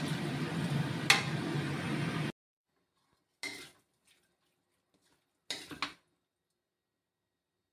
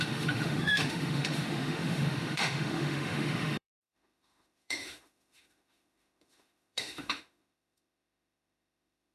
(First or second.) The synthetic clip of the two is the second